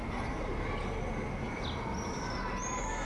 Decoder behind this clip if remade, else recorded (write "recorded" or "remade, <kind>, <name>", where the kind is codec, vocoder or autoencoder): recorded